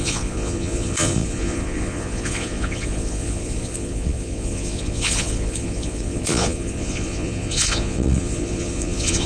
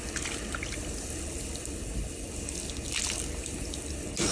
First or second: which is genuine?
second